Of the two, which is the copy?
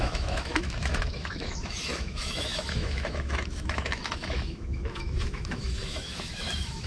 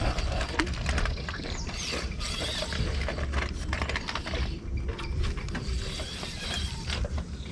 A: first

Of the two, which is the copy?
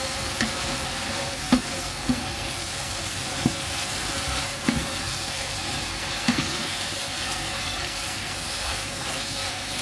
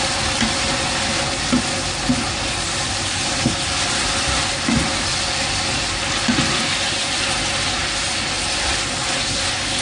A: first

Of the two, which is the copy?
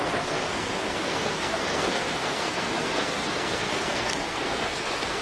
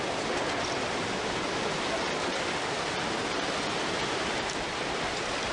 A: first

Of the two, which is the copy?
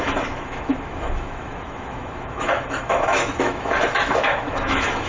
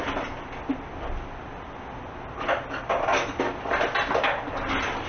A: first